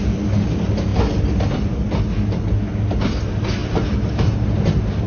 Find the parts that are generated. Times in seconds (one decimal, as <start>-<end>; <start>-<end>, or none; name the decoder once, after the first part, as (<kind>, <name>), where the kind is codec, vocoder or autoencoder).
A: none